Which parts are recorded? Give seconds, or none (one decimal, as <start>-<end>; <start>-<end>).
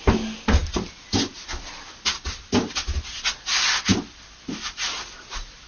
0.0-5.7